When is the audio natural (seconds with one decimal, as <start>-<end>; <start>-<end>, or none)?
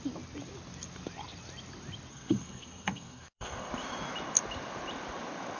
0.0-2.1; 3.7-5.6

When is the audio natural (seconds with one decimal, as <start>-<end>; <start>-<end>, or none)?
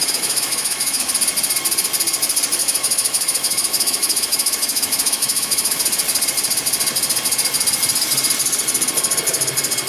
1.1-2.6; 5.8-9.9